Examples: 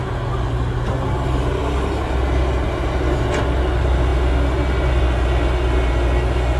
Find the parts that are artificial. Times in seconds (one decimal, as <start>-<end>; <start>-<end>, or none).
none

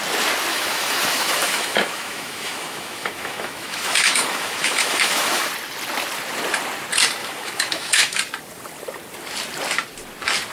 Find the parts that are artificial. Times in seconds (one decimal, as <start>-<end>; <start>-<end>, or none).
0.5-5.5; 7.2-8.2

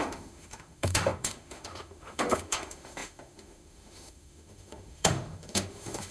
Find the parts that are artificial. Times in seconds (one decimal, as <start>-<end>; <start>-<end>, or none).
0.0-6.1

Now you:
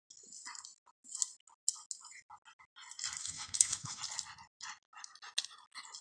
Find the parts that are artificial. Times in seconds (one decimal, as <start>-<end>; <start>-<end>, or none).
3.2-4.0